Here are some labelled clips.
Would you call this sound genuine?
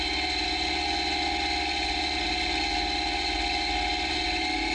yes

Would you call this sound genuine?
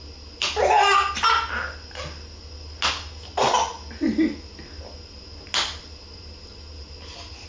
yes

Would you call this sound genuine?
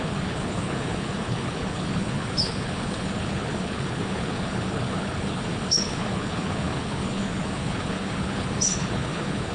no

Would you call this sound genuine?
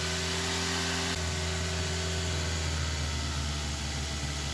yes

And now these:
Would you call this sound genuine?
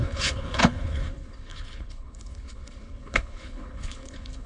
no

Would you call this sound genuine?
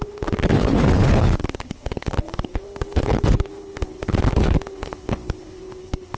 no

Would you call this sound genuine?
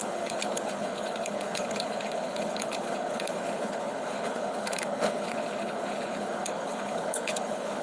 no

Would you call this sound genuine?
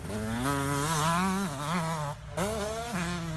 yes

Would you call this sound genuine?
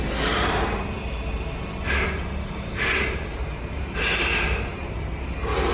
yes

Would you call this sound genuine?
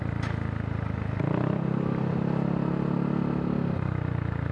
yes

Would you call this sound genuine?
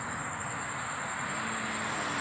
yes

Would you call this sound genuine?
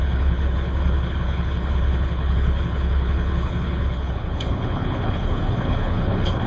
no